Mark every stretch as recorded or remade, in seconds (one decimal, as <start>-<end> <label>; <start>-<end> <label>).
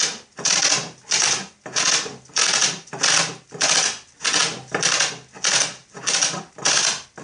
0.0-2.6 recorded; 2.6-3.3 remade; 3.3-4.4 recorded; 4.4-5.1 remade; 5.1-5.8 recorded; 5.8-6.4 remade; 6.4-7.2 recorded